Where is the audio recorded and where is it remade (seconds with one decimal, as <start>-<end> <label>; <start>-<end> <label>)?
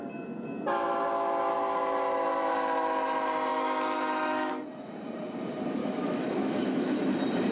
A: 0.0-3.5 recorded; 3.5-4.5 remade; 4.5-5.8 recorded; 5.8-7.0 remade; 7.0-7.5 recorded